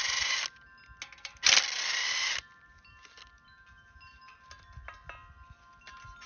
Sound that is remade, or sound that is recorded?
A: recorded